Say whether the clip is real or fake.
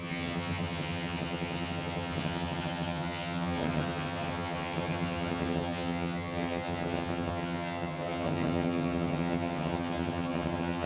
fake